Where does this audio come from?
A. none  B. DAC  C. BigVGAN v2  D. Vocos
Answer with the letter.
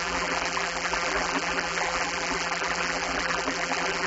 C